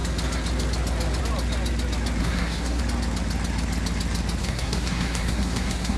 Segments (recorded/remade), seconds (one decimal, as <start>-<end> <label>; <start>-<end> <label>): 0.0-2.2 recorded; 2.2-2.8 remade; 2.8-4.4 recorded; 4.4-6.0 remade